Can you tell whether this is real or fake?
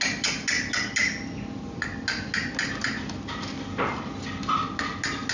real